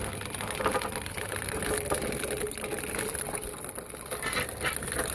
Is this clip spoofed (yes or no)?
no